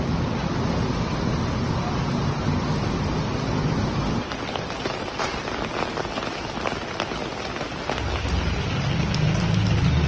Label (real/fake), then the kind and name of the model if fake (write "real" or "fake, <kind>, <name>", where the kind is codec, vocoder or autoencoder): real